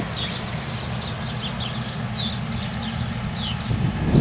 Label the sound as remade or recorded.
recorded